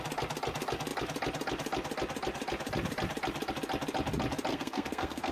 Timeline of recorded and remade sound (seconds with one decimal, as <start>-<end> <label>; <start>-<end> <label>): 0.0-4.5 recorded; 4.5-5.3 remade